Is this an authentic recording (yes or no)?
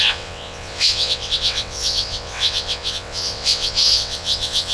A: no